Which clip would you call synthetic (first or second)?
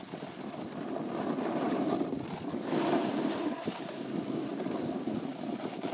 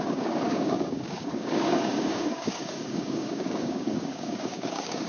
second